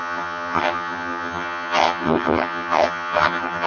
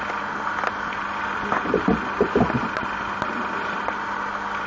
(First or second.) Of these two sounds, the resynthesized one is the first